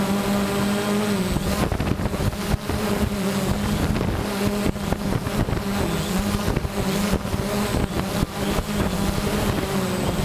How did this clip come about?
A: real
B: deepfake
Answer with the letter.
A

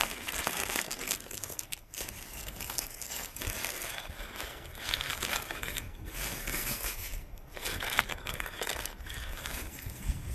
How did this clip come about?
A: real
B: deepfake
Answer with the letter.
B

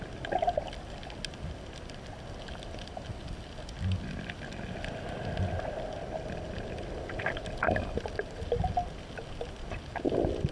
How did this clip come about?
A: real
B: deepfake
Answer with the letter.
A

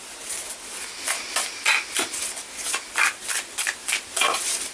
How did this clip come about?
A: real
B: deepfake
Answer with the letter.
A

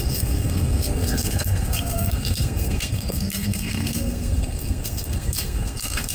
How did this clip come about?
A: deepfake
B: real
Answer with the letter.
A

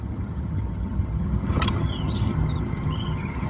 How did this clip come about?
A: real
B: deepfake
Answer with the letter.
B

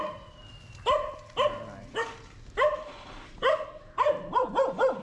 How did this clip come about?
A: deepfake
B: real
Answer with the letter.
B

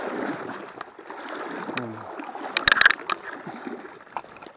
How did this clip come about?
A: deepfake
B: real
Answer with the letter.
B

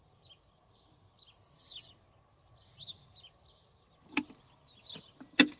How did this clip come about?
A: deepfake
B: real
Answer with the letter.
B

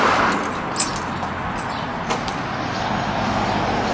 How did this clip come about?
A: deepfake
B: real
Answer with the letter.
B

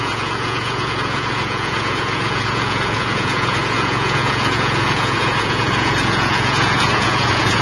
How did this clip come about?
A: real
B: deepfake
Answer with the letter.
B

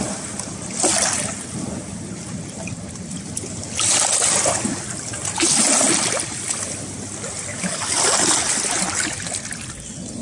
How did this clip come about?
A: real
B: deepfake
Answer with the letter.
A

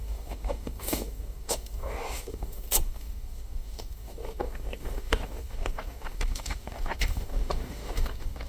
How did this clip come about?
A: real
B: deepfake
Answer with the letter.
B